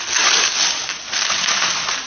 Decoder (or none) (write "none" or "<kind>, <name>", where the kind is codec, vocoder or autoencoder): none